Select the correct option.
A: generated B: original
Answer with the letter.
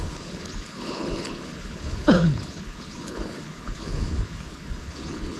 A